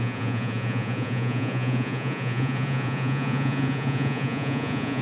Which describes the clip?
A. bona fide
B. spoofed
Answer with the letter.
B